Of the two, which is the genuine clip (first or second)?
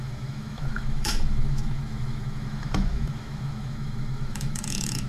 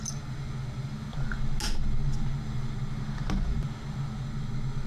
second